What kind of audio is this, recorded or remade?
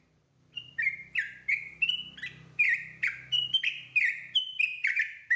remade